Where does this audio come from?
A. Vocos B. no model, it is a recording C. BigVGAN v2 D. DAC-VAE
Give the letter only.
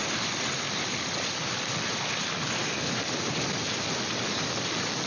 B